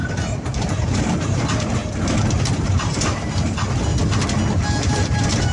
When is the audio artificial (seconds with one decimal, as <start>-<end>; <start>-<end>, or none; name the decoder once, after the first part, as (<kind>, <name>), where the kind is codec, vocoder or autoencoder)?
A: 0.6-1.8 (vocoder, BigVGAN v2); 2.4-3.9; 4.9-5.5